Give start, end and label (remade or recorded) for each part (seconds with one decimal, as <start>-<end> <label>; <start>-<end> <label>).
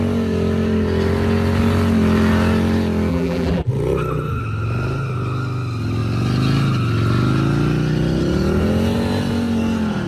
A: 0.0-3.1 recorded; 3.1-3.7 remade; 3.7-10.1 recorded